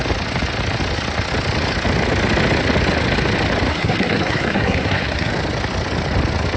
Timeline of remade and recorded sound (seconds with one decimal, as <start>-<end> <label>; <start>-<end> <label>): 0.0-3.7 recorded; 3.7-5.3 remade; 5.3-6.6 recorded